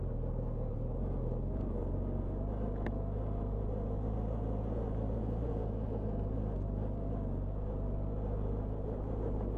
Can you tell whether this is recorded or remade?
recorded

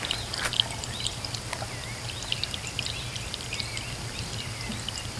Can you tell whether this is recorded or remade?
recorded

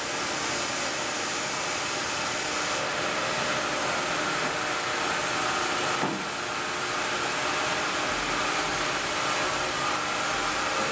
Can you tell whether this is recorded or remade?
recorded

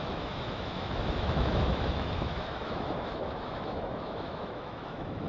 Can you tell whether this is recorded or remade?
remade